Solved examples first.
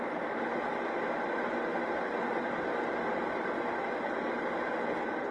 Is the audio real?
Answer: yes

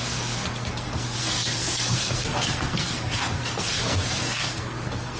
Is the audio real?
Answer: no